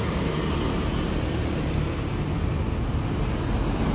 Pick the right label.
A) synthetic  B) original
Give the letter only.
B